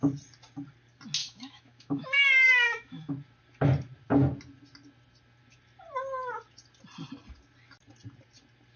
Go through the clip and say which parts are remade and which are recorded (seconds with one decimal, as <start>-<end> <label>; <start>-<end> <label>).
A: 0.0-1.2 recorded; 1.2-3.1 remade; 3.1-8.8 recorded